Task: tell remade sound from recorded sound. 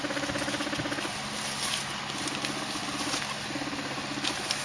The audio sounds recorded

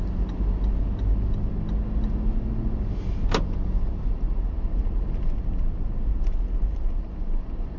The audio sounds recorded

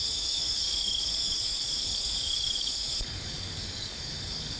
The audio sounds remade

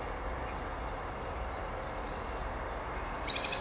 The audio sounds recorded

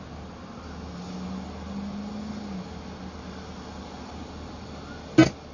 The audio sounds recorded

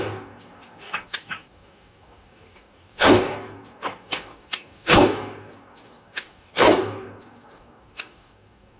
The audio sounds remade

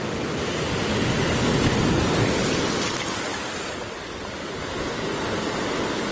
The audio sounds recorded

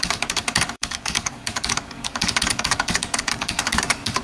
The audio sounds remade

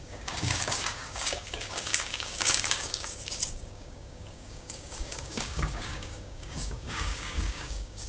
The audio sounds remade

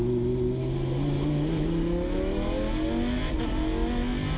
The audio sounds recorded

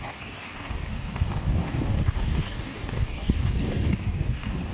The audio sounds remade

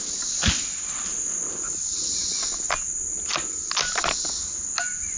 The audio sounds recorded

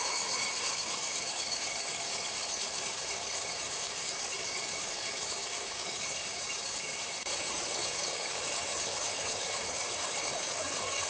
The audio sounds remade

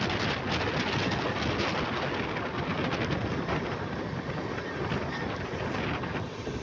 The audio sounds recorded